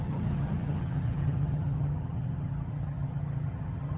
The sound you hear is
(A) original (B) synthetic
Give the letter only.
B